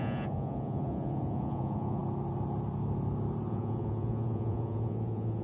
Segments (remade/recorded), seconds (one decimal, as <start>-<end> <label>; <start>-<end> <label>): 0.0-2.0 remade; 2.0-3.5 recorded; 3.5-5.4 remade